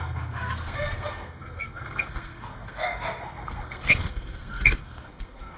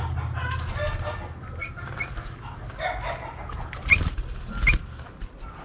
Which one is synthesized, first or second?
first